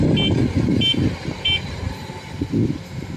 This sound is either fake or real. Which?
real